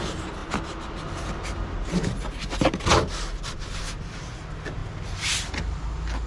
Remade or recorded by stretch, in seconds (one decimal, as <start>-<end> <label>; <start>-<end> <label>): 0.0-6.3 recorded